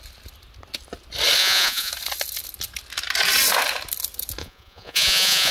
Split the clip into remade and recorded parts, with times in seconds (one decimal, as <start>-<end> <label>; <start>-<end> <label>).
0.0-1.4 recorded; 1.4-1.9 remade; 1.9-4.4 recorded; 4.4-5.5 remade